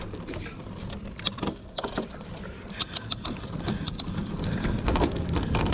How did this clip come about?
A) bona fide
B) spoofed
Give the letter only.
B